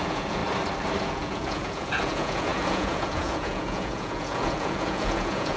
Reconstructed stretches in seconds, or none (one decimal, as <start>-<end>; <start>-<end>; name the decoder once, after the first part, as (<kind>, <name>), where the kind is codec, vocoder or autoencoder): 0.0-0.4 (vocoder, Vocos); 1.0-5.6